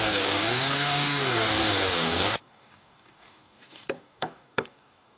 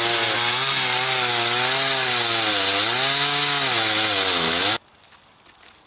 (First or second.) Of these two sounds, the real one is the second